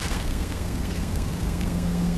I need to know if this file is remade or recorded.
remade